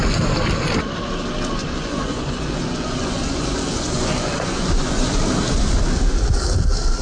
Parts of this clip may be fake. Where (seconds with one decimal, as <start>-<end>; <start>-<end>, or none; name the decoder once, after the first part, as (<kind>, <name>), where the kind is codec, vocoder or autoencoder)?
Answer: 1.6-5.2 (vocoder, Vocos)